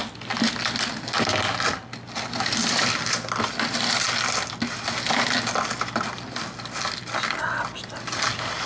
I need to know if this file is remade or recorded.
recorded